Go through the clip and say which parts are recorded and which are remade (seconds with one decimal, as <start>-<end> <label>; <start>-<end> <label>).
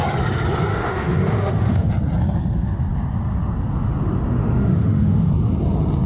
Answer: 0.0-0.7 recorded; 0.7-1.9 remade; 1.9-4.4 recorded; 4.4-5.3 remade; 5.3-6.1 recorded